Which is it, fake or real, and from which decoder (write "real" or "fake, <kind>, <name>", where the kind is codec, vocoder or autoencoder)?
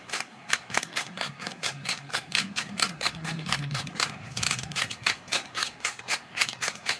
fake, codec, SNAC